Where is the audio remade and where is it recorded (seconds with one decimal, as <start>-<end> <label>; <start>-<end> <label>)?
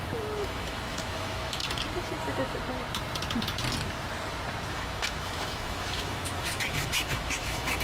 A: 0.0-1.6 remade; 1.6-4.7 recorded; 4.7-7.8 remade